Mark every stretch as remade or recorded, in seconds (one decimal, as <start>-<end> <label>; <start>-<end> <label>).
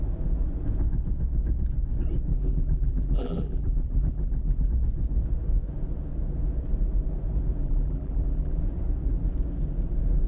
0.0-2.3 recorded; 2.3-4.7 remade; 4.7-7.6 recorded; 7.6-8.6 remade; 8.6-10.3 recorded